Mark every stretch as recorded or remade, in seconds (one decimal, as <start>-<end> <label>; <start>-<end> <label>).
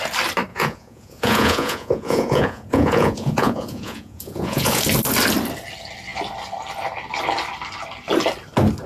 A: 0.0-0.5 recorded; 0.5-4.8 remade; 4.8-8.9 recorded